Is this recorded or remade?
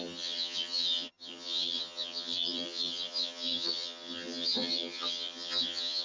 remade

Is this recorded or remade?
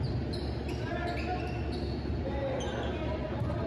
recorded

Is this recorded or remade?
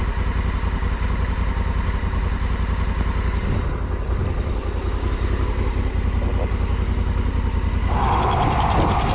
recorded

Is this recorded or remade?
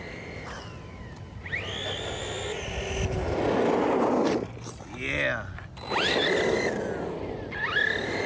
recorded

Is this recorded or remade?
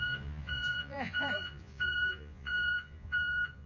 remade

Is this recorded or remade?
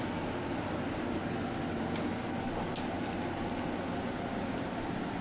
recorded